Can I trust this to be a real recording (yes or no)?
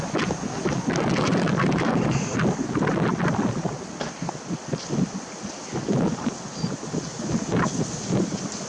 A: yes